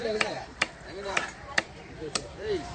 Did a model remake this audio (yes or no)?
yes